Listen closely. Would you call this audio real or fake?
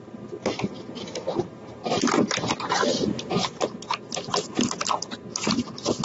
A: real